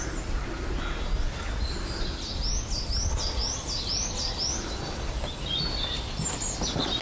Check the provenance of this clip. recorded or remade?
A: recorded